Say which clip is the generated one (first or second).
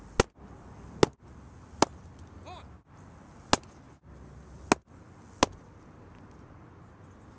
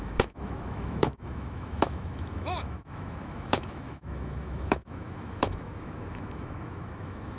second